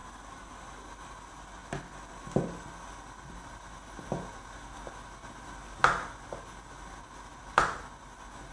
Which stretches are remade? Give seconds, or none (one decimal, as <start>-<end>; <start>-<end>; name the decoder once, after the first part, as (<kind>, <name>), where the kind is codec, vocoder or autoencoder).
none